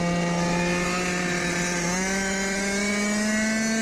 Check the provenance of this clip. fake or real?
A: real